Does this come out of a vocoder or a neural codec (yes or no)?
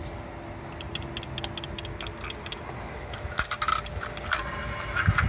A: no